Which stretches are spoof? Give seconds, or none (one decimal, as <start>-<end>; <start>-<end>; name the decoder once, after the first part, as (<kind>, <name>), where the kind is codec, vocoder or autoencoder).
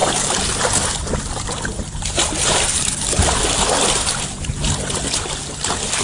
1.2-6.0 (vocoder, BigVGAN v2)